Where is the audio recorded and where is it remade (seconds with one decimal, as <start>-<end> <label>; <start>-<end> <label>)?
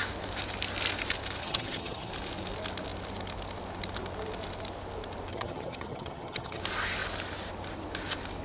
0.0-1.4 recorded; 1.4-2.1 remade; 2.1-5.3 recorded; 5.3-6.6 remade; 6.6-8.4 recorded